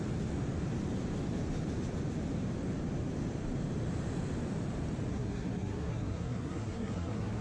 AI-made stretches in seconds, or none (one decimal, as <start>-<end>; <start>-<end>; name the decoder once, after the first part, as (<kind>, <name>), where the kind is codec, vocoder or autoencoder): 5.1-7.4 (codec, SNAC)